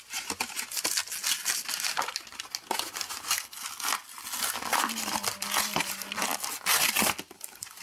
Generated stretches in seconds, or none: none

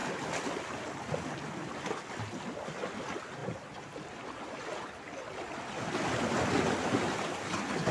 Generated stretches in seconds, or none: none

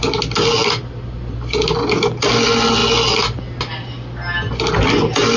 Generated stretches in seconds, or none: none